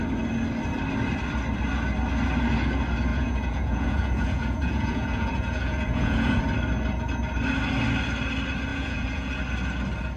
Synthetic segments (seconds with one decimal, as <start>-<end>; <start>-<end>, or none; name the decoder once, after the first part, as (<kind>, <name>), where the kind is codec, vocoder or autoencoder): 3.1-6.4 (vocoder, Vocos); 8.7-9.3